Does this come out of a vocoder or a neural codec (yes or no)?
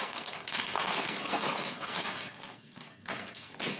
yes